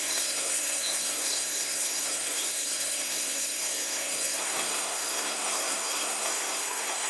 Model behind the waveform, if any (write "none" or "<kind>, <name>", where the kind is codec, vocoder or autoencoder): codec, SNAC